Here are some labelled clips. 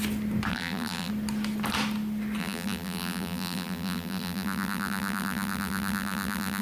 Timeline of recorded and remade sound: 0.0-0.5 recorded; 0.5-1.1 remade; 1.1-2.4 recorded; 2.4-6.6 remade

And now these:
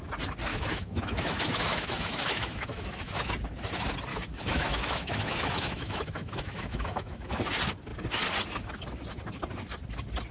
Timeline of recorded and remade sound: 0.0-0.5 recorded; 0.5-3.3 remade; 3.3-4.1 recorded; 4.1-7.4 remade; 7.4-10.3 recorded

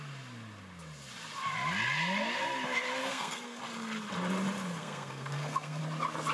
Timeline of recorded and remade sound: 0.0-3.0 recorded; 3.0-3.6 remade; 3.6-4.8 recorded; 4.8-5.8 remade; 5.8-6.3 recorded

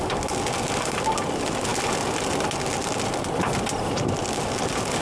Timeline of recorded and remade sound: 0.0-5.0 recorded

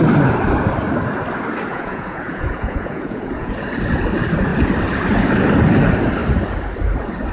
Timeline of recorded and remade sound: 0.0-1.7 recorded; 1.7-3.5 remade; 3.5-7.3 recorded

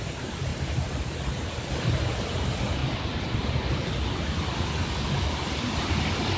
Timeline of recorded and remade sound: 0.0-0.5 recorded; 0.5-1.7 remade; 1.7-2.8 recorded; 2.8-3.9 remade; 3.9-6.4 recorded

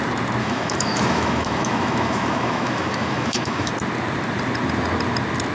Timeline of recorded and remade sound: 0.0-0.4 recorded; 0.4-3.7 remade; 3.7-5.5 recorded

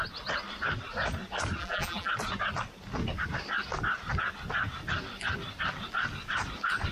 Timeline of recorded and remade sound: 0.0-1.6 recorded; 1.6-2.1 remade; 2.1-6.9 recorded